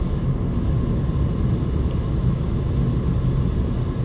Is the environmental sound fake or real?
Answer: real